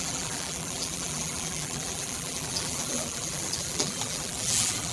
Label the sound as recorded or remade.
remade